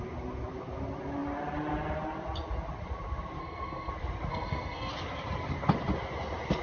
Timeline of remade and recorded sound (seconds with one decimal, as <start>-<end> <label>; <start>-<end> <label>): 0.0-3.4 recorded; 3.4-3.9 remade; 3.9-4.3 recorded; 4.3-4.9 remade; 4.9-6.6 recorded